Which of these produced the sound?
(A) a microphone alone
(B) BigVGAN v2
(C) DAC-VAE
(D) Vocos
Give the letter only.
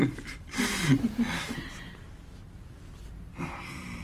A